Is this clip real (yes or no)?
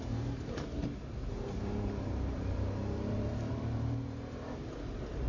no